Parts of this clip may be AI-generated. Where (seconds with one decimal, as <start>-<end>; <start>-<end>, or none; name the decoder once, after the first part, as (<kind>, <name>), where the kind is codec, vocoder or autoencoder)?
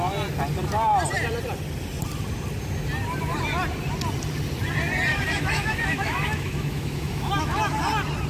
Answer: 5.1-7.8 (autoencoder, DAC-VAE)